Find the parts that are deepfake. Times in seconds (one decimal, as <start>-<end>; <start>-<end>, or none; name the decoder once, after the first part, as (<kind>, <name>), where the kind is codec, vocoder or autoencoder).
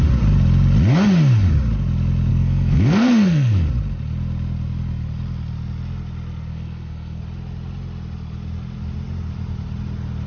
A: 2.3-3.7 (codec, SNAC); 6.5-7.2